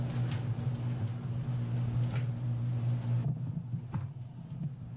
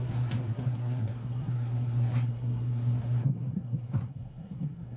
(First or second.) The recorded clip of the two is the first